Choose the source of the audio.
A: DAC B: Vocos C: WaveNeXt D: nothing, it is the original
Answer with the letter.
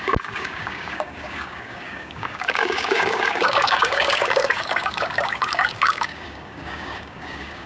A